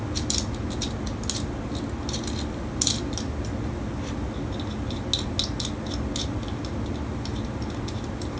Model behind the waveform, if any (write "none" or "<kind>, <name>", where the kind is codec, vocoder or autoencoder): none